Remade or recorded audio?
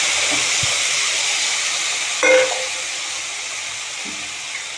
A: recorded